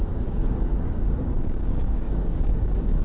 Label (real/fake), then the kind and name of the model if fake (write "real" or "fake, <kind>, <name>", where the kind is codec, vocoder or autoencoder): fake, codec, DAC